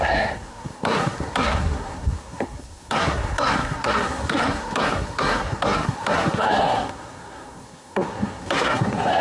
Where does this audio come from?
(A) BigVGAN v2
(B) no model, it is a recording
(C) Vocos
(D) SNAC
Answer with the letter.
D